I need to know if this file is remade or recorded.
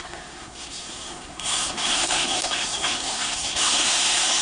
remade